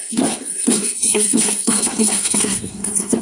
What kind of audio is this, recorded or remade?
remade